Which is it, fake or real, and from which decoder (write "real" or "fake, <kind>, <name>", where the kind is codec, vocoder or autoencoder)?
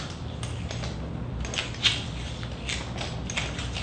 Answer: real